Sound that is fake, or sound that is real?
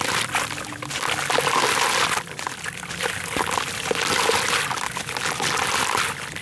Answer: real